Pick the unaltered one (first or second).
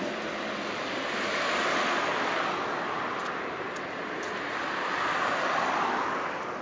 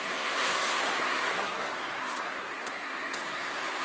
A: first